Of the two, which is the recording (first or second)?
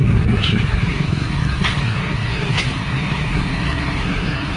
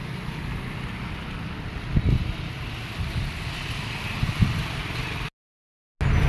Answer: second